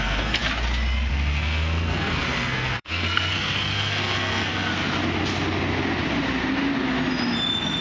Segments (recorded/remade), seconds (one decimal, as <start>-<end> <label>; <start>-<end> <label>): 0.0-0.4 remade; 0.4-1.1 recorded; 1.1-4.7 remade; 4.7-7.8 recorded